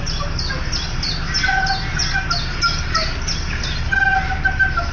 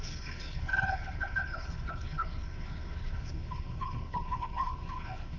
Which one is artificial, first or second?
second